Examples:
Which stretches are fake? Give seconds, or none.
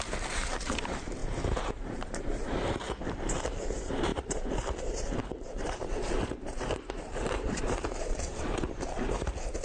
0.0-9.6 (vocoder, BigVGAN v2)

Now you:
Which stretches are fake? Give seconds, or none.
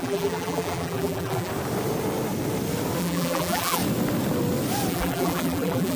0.0-1.5 (vocoder, BigVGAN v2); 3.0-3.8; 4.9-6.0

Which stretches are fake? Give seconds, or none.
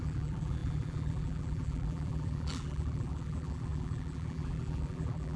0.0-5.4 (vocoder, BigVGAN v2)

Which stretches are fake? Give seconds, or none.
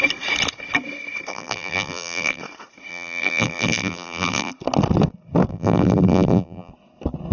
1.3-2.4 (vocoder, BigVGAN v2); 2.9-4.5; 5.5-6.7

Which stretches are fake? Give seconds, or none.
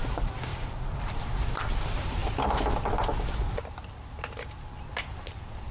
0.0-2.2 (vocoder, BigVGAN v2); 5.0-5.7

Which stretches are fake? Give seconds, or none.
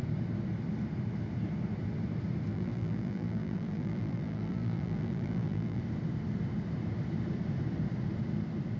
2.5-5.8 (vocoder, BigVGAN v2)